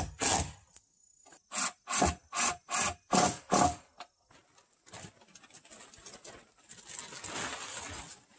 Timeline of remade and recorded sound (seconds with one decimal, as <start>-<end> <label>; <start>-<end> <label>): 0.0-8.4 recorded